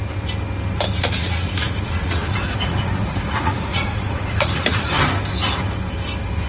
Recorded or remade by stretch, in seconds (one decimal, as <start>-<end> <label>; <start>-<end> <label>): 0.0-1.0 recorded; 1.0-4.9 remade; 4.9-6.5 recorded